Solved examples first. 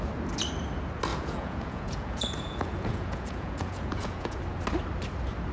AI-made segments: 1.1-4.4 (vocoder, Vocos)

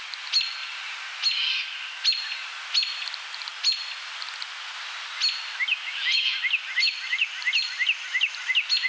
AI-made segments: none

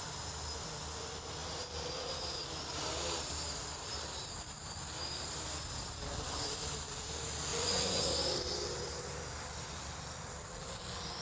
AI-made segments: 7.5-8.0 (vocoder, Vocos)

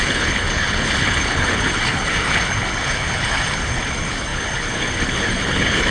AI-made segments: 0.0-5.9 (codec, HILCodec)